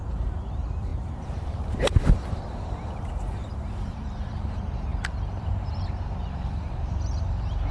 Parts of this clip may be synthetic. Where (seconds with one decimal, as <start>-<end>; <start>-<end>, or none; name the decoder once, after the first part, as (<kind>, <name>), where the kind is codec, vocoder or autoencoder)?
0.0-7.7 (vocoder, BigVGAN v2)